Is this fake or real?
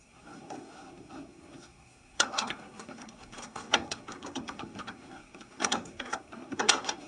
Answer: fake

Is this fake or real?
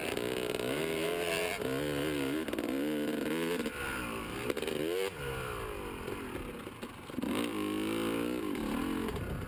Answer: real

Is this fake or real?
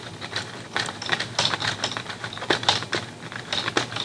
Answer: real